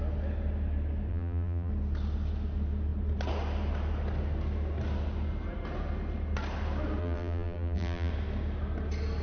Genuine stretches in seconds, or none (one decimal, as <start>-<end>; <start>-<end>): 0.0-1.1; 1.7-7.0; 8.1-9.2